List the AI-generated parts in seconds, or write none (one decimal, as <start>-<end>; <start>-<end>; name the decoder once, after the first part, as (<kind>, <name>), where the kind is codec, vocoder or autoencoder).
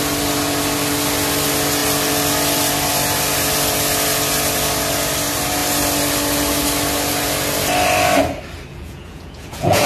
8.7-9.9 (vocoder, Vocos)